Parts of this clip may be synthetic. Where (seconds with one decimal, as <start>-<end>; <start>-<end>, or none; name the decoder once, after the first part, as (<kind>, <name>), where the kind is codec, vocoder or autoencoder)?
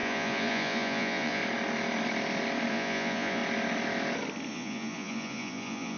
0.0-1.4 (vocoder, Vocos); 2.7-3.4; 4.5-6.0